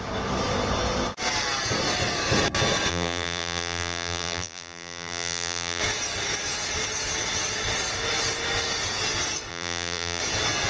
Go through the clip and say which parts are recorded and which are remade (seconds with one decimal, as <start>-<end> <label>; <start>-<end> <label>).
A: 0.0-2.9 recorded; 2.9-5.8 remade; 5.8-9.5 recorded; 9.5-10.2 remade; 10.2-10.7 recorded